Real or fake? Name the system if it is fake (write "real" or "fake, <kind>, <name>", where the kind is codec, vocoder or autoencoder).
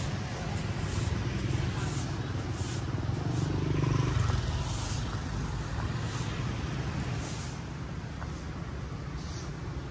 real